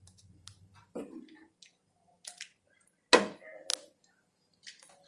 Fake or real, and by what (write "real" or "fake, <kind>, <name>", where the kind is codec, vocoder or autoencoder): real